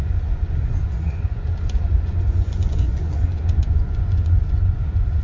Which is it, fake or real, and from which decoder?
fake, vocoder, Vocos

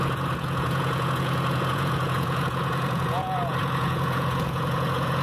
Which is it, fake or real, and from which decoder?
fake, vocoder, Vocos